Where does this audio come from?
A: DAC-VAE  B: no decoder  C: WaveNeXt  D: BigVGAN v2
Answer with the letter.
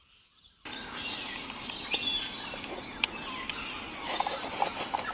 B